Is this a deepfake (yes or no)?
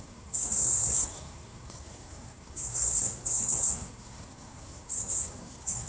yes